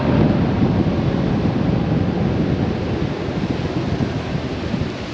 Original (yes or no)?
yes